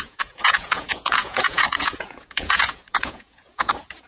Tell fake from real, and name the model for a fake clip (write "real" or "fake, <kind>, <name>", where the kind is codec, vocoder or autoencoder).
fake, vocoder, Vocos